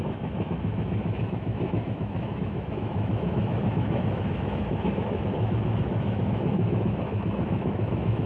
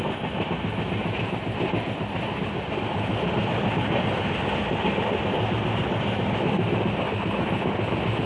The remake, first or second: first